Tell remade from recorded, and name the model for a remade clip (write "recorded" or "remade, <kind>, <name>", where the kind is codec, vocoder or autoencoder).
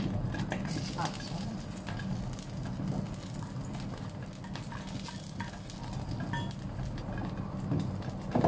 recorded